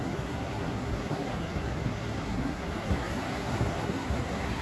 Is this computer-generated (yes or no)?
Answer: yes